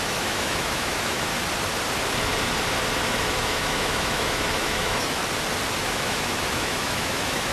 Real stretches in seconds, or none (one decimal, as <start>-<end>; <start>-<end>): 1.3-3.0; 5.2-5.8

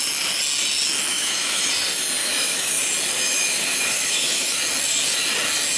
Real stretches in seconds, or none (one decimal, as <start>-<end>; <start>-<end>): 0.0-1.1; 1.7-2.2; 2.8-3.2; 4.6-5.8